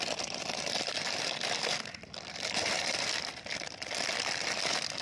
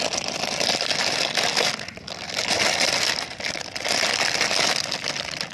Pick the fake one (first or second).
first